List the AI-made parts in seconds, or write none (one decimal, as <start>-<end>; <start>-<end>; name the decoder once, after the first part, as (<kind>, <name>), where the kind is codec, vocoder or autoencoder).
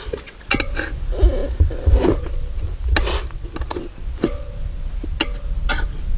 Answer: none